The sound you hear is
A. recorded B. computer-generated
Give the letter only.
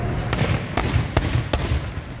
A